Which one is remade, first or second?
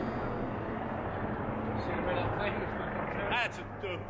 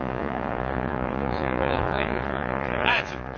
second